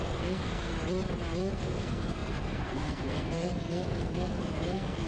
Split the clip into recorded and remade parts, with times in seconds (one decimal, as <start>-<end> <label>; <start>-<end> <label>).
0.0-0.7 remade; 0.7-1.5 recorded; 1.5-5.1 remade